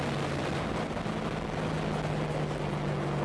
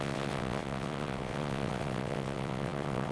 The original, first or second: first